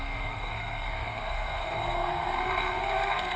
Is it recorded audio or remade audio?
remade